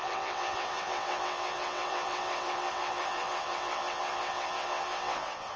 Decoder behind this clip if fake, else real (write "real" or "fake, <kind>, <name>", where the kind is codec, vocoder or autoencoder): fake, vocoder, WaveNeXt